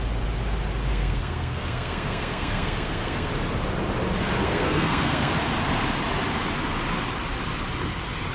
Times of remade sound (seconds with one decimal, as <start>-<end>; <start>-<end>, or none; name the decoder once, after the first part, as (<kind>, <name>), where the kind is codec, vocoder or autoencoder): 0.9-3.3 (codec, SNAC); 4.4-5.3